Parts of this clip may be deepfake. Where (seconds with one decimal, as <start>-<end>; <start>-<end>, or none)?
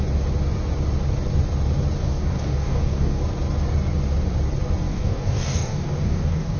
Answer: 2.0-3.2; 4.9-6.6